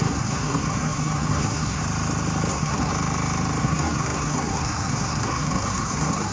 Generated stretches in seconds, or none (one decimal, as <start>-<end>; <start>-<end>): 0.0-1.8; 2.5-2.9; 3.6-6.3